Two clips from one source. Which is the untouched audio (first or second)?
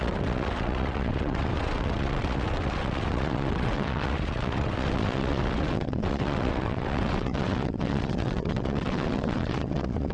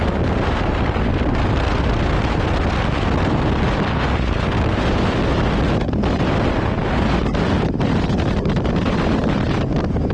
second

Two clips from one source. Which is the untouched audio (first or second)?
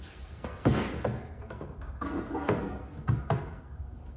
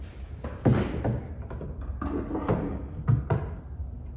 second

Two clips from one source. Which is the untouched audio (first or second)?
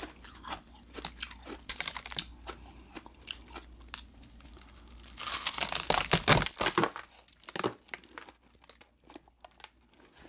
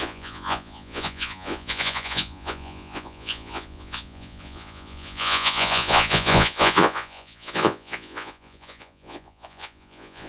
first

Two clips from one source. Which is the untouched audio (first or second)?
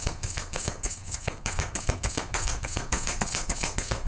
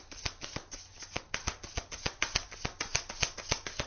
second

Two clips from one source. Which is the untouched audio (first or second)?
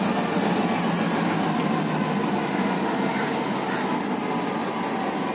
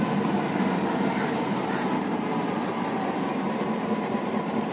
first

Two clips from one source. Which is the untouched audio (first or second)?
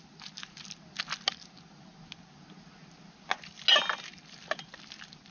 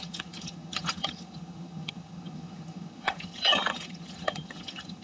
first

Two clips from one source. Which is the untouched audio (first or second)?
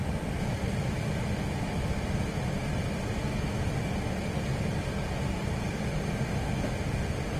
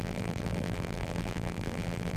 first